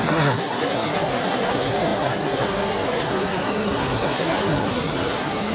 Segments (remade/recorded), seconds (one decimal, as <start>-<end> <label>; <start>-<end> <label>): 0.0-5.5 remade